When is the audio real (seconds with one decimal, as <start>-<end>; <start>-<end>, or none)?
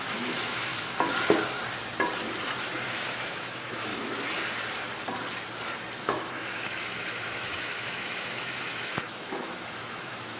0.7-2.9; 3.9-6.0